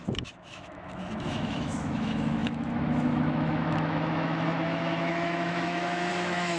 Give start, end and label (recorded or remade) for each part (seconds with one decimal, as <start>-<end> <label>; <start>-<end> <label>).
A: 0.0-6.6 remade